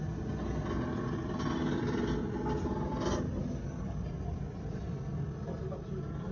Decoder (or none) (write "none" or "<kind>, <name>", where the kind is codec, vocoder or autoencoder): none